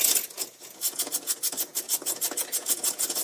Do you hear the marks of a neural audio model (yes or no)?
yes